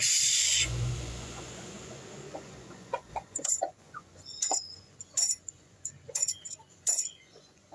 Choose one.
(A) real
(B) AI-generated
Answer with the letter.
B